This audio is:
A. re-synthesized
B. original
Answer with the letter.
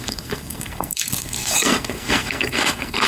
A